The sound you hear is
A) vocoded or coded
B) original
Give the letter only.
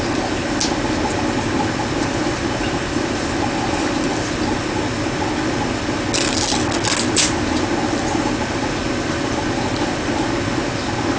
B